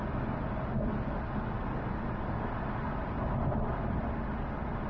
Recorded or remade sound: recorded